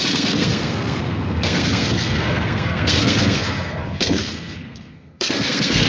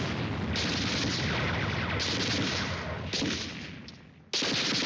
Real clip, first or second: second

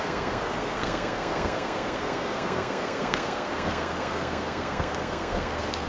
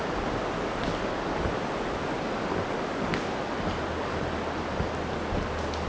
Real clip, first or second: second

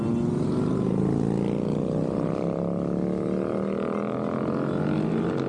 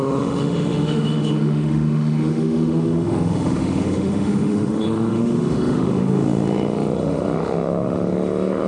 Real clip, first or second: first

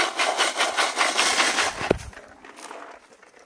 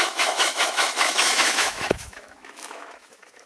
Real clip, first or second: first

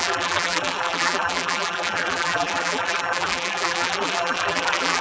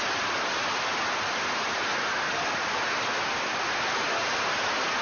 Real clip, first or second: second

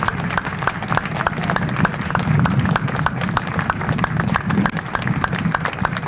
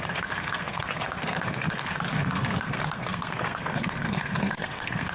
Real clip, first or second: first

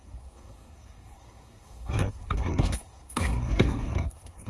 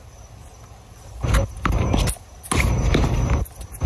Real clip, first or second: second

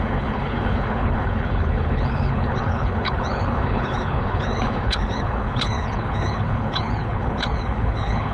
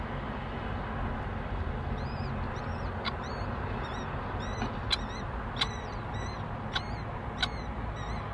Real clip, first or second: second